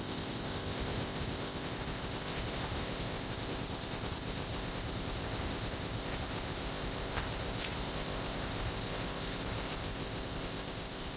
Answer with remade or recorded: remade